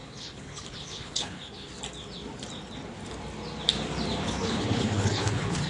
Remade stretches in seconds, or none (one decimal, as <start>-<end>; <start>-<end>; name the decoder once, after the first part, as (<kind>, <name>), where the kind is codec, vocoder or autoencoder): 0.0-1.7 (codec, HILCodec); 4.2-5.7